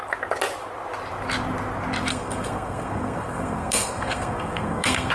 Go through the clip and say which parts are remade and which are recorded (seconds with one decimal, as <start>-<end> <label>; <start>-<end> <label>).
0.0-2.1 recorded; 2.1-5.1 remade